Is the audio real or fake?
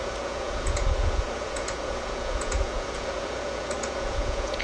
fake